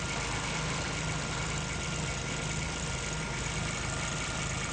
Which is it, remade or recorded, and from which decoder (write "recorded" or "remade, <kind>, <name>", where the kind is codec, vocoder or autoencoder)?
recorded